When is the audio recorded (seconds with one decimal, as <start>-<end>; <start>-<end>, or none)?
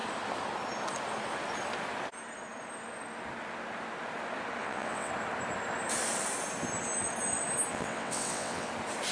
0.0-4.6; 5.1-7.7; 8.7-9.1